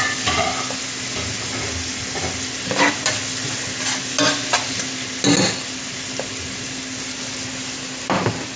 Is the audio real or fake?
real